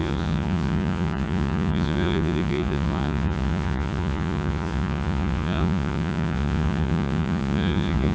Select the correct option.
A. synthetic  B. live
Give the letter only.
A